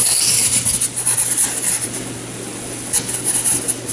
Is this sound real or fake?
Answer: real